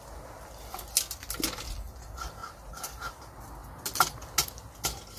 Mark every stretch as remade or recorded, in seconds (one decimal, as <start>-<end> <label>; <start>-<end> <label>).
0.0-2.4 recorded; 2.4-3.2 remade; 3.2-5.2 recorded